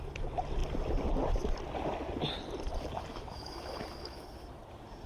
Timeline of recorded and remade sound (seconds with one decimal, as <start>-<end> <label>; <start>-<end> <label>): 0.0-3.1 recorded; 3.1-4.6 remade; 4.6-5.1 recorded